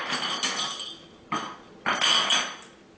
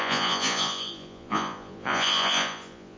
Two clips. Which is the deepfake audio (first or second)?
second